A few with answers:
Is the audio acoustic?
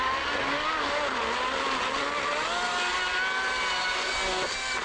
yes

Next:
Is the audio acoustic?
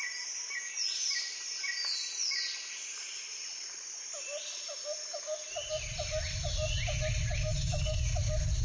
yes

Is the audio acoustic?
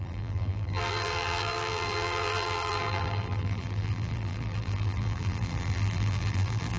no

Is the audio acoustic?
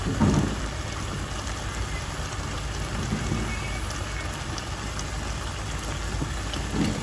yes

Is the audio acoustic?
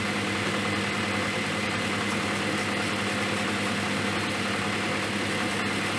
yes